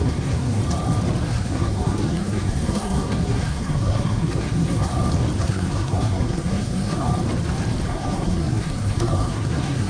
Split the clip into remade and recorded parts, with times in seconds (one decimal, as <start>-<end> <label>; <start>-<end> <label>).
0.0-0.6 remade; 0.6-1.3 recorded; 1.3-4.9 remade; 4.9-5.4 recorded; 5.4-7.1 remade; 7.1-7.9 recorded; 7.9-9.9 remade